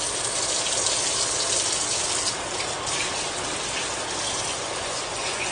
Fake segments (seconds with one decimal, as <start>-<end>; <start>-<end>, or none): 4.5-5.5